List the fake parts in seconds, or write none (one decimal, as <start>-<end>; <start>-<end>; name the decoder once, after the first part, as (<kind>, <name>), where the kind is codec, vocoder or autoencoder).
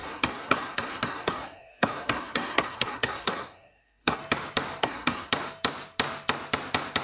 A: 0.0-4.2 (codec, SNAC); 4.8-5.3